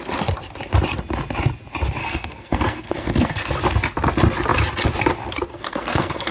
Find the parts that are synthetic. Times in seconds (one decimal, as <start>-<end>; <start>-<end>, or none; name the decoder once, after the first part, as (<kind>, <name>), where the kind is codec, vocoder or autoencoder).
2.0-3.5 (codec, SNAC); 5.5-6.3